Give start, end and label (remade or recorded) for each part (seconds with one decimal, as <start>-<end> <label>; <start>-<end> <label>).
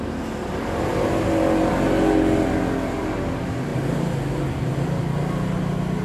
0.0-6.0 recorded